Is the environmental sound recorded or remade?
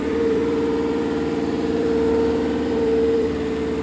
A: remade